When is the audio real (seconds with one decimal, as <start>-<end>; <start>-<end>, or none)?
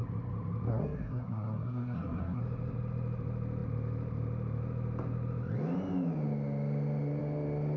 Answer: 0.0-0.7; 2.4-7.8